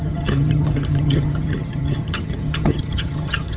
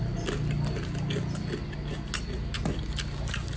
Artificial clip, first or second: first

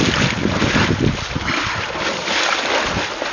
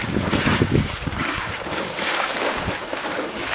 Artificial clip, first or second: second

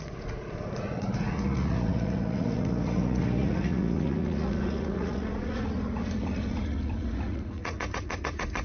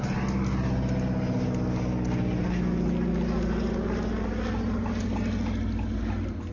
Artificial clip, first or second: first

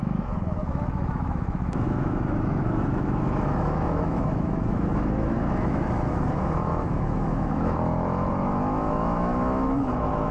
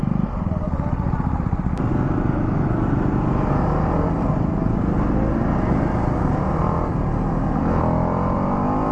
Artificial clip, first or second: first